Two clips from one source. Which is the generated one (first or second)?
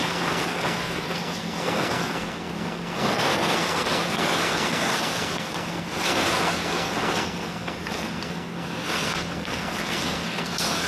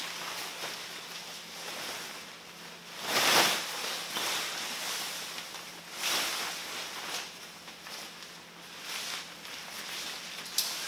first